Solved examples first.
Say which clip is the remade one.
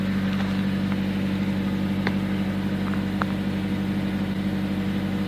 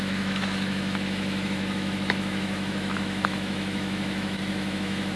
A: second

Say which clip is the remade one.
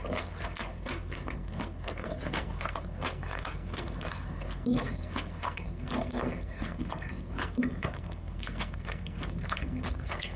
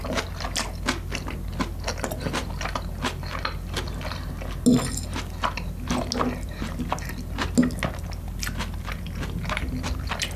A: first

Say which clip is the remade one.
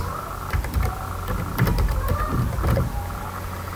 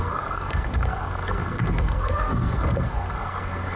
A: second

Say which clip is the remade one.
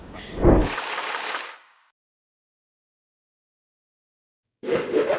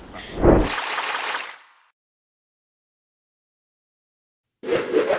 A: first